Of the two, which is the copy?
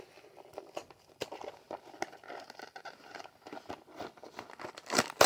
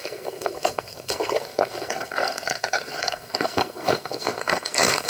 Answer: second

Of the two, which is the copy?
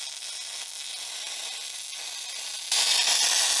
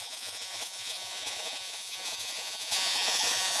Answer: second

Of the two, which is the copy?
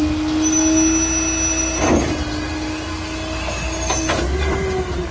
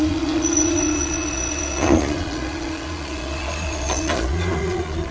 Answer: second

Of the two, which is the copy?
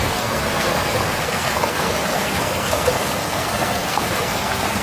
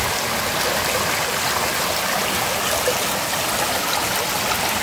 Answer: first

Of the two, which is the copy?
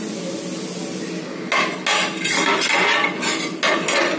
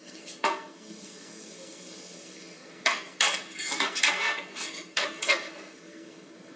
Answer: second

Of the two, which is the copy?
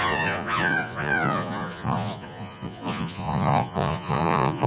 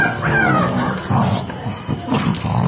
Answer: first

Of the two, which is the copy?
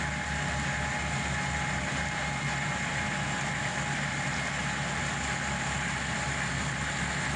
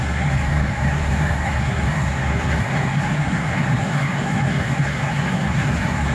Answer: second